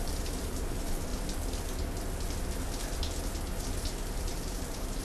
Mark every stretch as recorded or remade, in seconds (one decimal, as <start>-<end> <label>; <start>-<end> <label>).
0.0-1.1 remade; 1.1-4.1 recorded; 4.1-5.0 remade

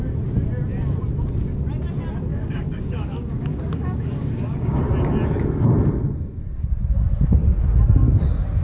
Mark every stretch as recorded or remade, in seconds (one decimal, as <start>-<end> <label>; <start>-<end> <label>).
0.0-2.3 recorded; 2.3-4.8 remade; 4.8-8.6 recorded

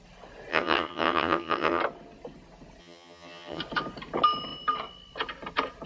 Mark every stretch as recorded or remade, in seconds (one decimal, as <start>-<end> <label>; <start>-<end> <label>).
0.0-0.5 recorded; 0.5-1.8 remade; 1.8-2.8 recorded; 2.8-3.6 remade; 3.6-5.9 recorded